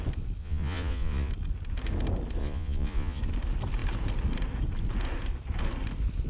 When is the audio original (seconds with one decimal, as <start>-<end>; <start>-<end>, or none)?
0.0-0.4; 1.3-2.4; 3.2-6.3